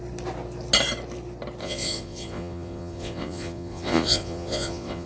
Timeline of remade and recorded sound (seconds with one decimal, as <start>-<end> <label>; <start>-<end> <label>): 0.0-1.6 recorded; 1.6-5.1 remade